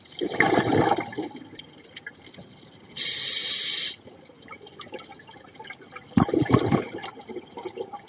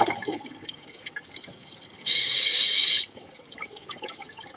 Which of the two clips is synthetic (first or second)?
second